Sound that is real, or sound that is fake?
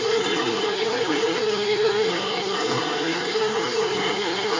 fake